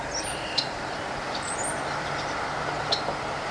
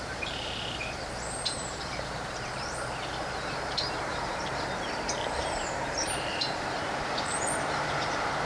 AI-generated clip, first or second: second